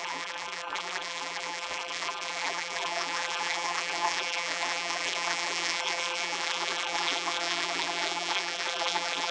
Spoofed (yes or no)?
yes